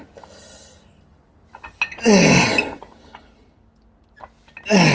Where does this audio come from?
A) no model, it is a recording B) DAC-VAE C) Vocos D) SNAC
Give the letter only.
A